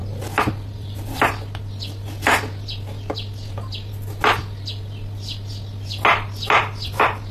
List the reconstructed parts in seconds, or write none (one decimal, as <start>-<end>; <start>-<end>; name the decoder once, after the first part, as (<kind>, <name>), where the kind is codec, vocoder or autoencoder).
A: none